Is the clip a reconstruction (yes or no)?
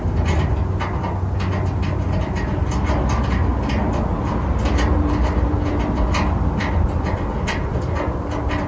no